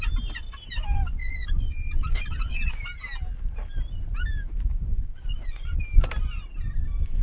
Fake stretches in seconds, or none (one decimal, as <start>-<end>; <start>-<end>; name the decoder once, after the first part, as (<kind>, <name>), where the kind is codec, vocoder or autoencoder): 1.2-2.7 (vocoder, Vocos); 4.9-5.8